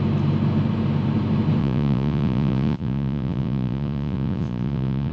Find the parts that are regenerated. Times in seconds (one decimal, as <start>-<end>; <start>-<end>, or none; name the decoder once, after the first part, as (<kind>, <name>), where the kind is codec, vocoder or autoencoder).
1.6-5.1 (vocoder, Vocos)